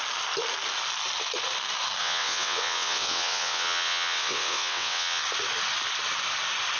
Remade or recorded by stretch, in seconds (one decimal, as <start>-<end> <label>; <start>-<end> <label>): 0.0-2.0 recorded; 2.0-5.2 remade; 5.2-6.8 recorded